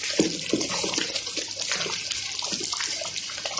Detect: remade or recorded recorded